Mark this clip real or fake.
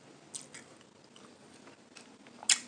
real